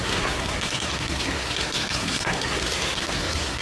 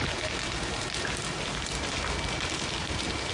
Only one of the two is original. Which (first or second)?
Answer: second